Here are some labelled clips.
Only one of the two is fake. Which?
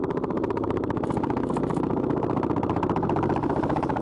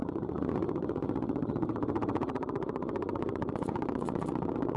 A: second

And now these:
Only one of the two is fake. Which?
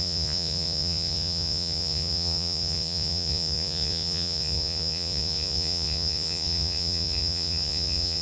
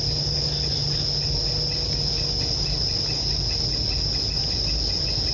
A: first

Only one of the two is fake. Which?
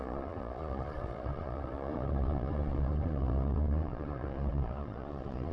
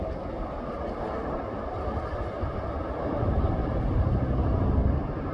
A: first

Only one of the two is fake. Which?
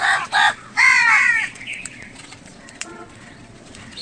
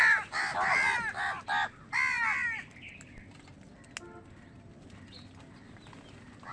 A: first